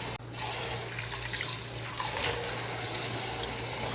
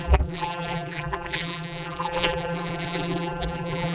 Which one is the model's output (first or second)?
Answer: second